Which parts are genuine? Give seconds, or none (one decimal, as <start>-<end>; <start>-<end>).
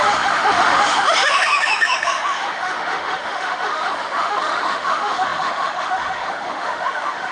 none